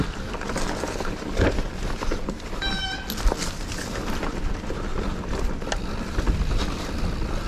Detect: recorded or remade recorded